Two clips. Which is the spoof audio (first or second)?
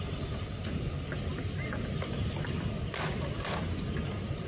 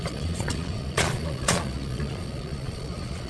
second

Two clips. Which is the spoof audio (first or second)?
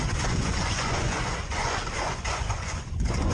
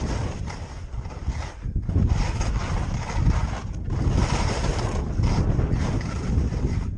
first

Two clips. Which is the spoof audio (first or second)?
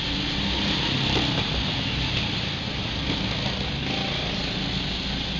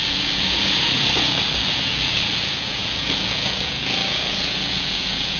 second